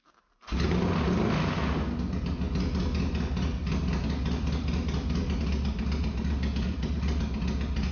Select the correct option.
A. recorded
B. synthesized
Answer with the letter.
A